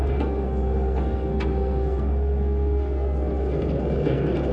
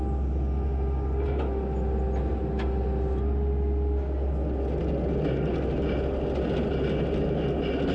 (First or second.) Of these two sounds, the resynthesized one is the first